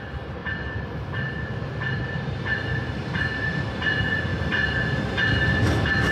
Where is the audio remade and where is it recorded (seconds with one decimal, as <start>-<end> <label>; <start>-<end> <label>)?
0.0-6.1 recorded